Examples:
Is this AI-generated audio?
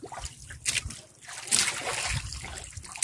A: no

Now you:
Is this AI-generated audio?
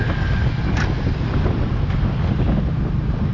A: no